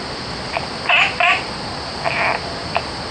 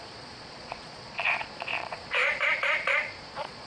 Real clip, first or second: first